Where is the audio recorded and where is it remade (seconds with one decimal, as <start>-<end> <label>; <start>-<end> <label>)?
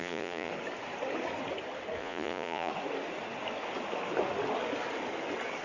0.0-0.5 remade; 0.5-2.0 recorded; 2.0-2.7 remade; 2.7-5.6 recorded